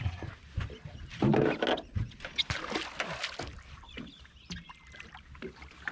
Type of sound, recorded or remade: recorded